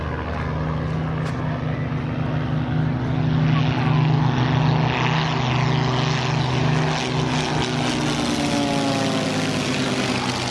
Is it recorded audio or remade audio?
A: recorded